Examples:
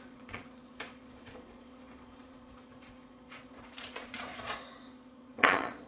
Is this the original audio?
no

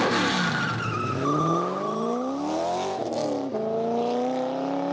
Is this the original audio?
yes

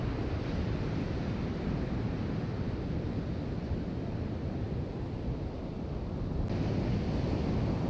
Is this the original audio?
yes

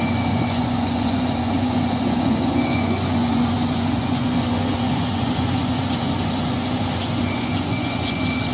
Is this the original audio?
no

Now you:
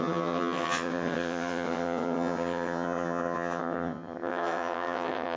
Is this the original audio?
no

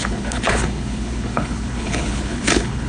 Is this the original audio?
no